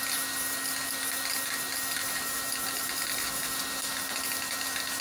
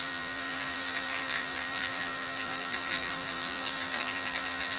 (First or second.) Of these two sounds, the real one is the first